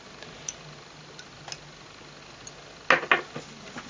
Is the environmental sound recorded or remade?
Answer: recorded